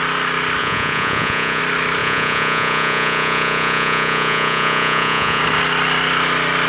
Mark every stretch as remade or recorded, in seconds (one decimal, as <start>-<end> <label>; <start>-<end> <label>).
0.0-0.6 recorded; 0.6-1.6 remade; 1.6-2.0 recorded; 2.0-5.4 remade; 5.4-6.7 recorded